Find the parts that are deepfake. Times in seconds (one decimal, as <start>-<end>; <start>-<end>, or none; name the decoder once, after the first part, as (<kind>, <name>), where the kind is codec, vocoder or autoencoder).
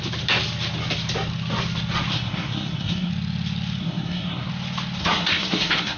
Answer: 2.1-3.1 (codec, SNAC); 3.8-4.5; 5.0-6.0